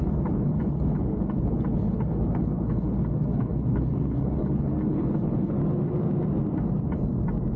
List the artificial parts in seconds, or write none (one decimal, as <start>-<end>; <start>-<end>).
0.0-5.6